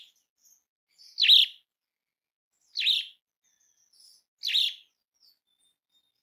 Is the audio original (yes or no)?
yes